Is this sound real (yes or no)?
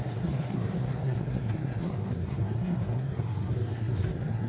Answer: no